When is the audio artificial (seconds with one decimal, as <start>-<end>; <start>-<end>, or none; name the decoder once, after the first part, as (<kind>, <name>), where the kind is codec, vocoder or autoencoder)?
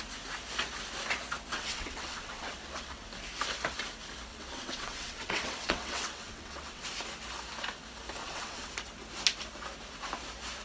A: 1.5-3.0 (vocoder, WaveNeXt); 4.3-6.8; 8.2-8.7